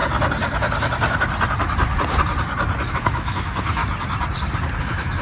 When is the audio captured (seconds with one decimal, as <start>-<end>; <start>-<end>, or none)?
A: 0.0-2.9; 3.8-4.8